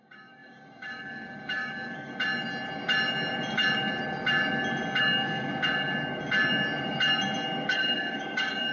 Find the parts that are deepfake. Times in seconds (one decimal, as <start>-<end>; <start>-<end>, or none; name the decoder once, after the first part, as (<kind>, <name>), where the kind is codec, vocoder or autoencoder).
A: 0.0-2.1 (codec, DAC); 5.0-5.5; 7.7-8.7